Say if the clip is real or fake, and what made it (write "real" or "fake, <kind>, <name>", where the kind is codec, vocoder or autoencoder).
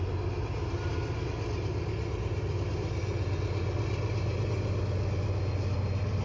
real